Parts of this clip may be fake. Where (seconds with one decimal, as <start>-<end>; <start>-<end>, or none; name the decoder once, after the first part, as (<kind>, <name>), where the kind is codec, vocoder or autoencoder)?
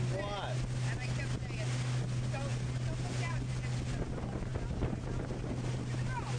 none